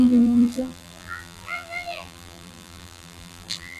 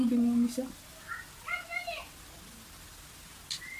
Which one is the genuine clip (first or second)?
second